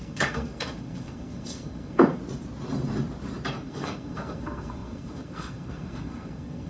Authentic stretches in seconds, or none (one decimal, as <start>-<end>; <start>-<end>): 2.2-3.5